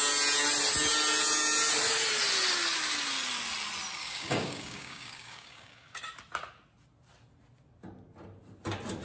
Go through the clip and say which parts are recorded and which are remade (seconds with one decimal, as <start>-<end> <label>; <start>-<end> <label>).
0.0-4.0 recorded; 4.0-6.0 remade; 6.0-9.0 recorded